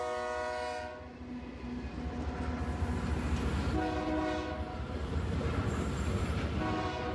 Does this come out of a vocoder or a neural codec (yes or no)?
no